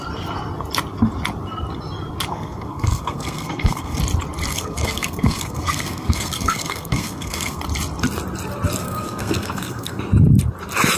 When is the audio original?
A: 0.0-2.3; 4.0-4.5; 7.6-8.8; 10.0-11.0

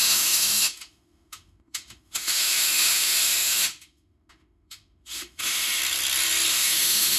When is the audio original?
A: 5.8-6.5

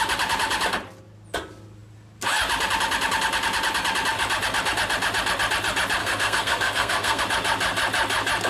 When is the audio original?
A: 0.0-6.0; 7.2-8.5

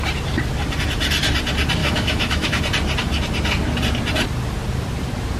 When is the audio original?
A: 0.0-1.8; 2.6-5.4

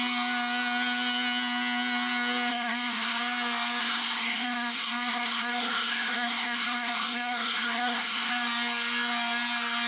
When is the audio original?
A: 0.0-2.5; 3.2-3.8; 8.3-9.9

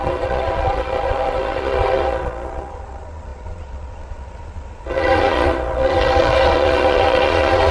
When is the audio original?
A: none

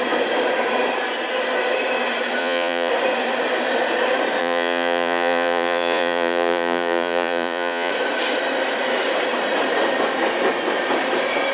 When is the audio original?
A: 0.0-2.4; 2.9-4.4; 7.9-11.5